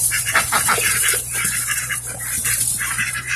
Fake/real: fake